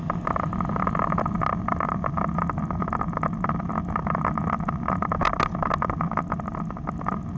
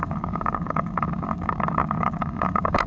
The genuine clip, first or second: first